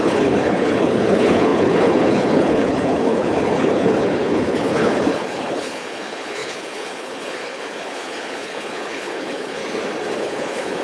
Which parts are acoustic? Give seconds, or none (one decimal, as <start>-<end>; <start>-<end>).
9.6-10.2